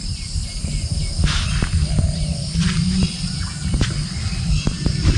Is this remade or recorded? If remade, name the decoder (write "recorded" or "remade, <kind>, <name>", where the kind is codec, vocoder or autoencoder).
recorded